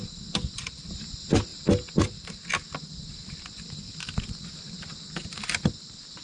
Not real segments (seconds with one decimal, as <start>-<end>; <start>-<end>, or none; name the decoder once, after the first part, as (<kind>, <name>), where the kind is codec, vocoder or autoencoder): none